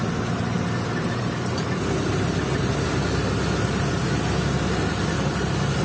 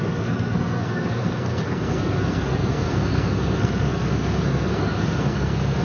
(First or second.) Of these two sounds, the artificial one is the second